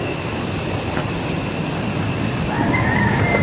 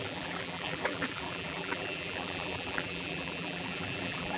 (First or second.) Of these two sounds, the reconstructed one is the second